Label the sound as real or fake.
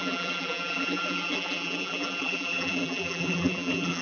fake